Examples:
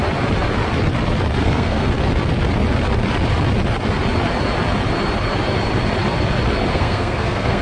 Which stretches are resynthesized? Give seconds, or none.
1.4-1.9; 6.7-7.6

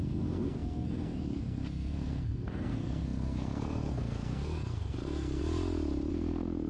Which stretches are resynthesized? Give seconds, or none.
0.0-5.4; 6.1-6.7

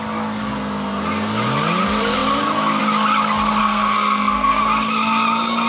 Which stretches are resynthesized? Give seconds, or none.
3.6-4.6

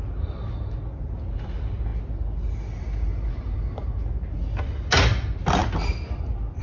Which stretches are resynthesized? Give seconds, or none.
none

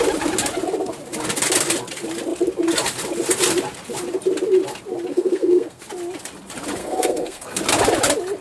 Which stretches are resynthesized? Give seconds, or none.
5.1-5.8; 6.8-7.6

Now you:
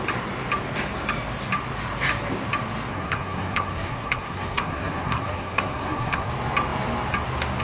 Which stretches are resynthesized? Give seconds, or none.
2.9-6.3